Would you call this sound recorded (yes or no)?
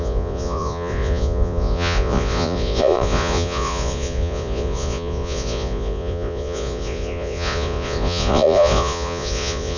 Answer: no